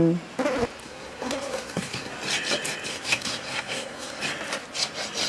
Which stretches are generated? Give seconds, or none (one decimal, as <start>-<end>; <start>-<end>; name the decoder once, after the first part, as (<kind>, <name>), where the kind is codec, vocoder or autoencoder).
0.8-2.1 (codec, SNAC); 2.9-4.2